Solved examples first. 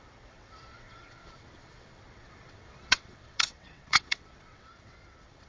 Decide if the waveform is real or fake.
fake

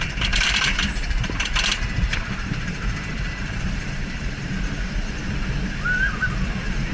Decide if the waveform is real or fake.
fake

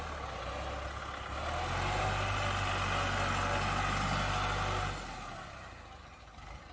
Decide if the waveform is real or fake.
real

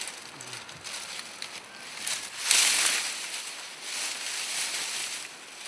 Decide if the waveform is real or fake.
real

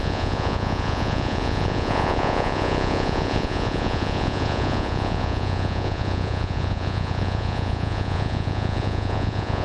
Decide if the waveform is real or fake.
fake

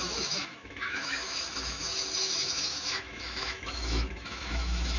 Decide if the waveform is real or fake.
fake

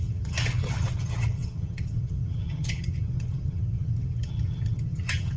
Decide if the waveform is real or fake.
fake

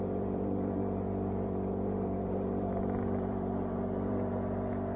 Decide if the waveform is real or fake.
fake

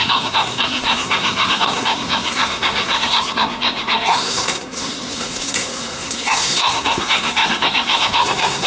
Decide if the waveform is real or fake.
fake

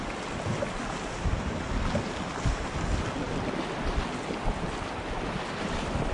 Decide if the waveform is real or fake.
real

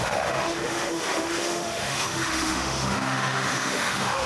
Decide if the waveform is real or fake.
fake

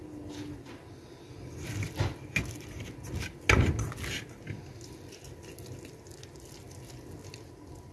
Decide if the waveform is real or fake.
real